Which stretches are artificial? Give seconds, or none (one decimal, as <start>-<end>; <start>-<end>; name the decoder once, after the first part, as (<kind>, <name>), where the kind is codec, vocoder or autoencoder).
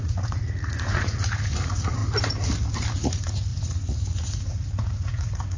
0.0-2.0 (vocoder, Vocos); 2.9-5.6